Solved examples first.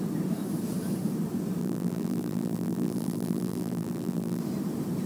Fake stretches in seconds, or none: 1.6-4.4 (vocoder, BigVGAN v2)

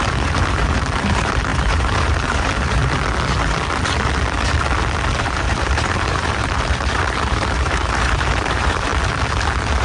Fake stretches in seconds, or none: 0.0-2.8 (vocoder, BigVGAN v2); 5.1-8.9